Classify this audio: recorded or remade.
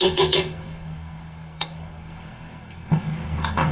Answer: remade